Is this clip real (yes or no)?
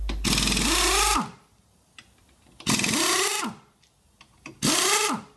yes